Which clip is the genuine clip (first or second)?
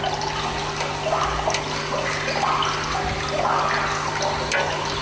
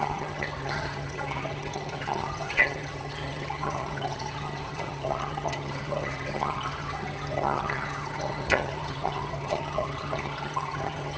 first